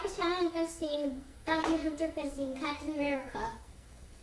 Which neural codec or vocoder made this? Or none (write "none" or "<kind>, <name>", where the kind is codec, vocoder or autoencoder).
codec, SNAC